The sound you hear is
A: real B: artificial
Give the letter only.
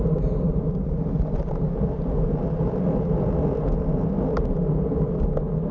A